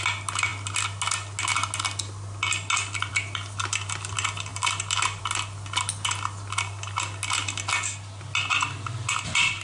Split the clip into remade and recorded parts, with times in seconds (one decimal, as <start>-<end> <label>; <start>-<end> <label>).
0.0-9.6 recorded